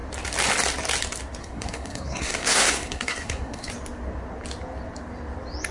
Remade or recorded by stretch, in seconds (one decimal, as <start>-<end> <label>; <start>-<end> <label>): 0.0-1.4 recorded; 1.4-3.7 remade; 3.7-5.7 recorded